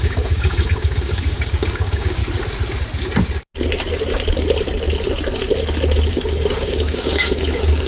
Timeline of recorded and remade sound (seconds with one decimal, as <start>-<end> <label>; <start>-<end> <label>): 0.0-2.2 remade; 2.2-6.1 recorded; 6.1-7.9 remade